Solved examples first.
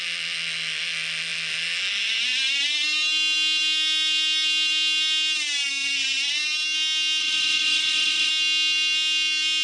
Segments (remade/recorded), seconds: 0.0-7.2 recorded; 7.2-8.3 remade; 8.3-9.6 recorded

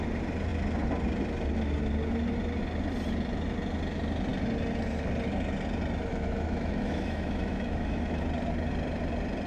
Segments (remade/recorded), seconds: 0.0-6.1 recorded; 6.1-8.2 remade; 8.2-9.5 recorded

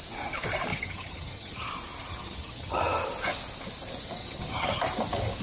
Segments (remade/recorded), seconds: 0.0-0.7 recorded; 0.7-1.7 remade; 1.7-2.1 recorded; 2.1-2.8 remade; 2.8-4.2 recorded; 4.2-4.8 remade; 4.8-5.4 recorded

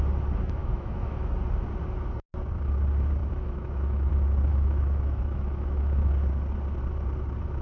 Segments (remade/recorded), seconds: 0.0-0.6 recorded; 0.6-1.3 remade; 1.3-3.2 recorded; 3.2-4.1 remade; 4.1-4.5 recorded; 4.5-6.1 remade; 6.1-7.6 recorded

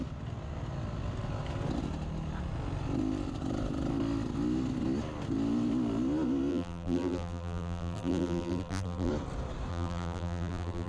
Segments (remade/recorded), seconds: 0.0-6.5 recorded; 6.5-9.1 remade; 9.1-9.7 recorded; 9.7-10.9 remade

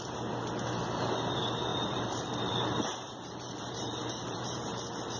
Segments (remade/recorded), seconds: 0.0-1.7 recorded; 1.7-4.8 remade; 4.8-5.2 recorded